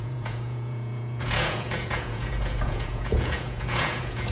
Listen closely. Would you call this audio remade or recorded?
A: remade